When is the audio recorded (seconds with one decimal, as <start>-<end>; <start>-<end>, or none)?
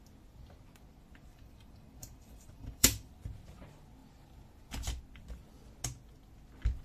0.0-1.3; 3.1-6.8